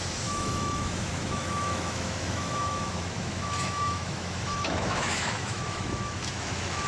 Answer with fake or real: fake